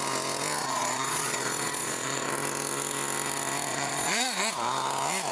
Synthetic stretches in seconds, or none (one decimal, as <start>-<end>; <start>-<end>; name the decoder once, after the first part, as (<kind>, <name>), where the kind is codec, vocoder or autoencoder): 0.6-2.3 (vocoder, Vocos); 3.7-4.5